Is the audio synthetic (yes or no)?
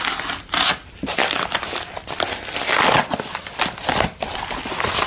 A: no